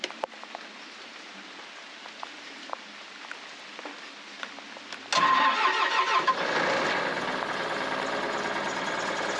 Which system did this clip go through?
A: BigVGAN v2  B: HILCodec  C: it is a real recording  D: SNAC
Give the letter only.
C